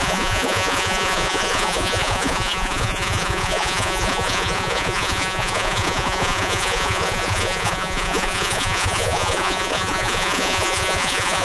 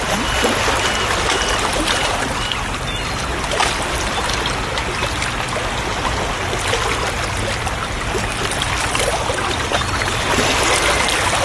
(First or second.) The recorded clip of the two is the second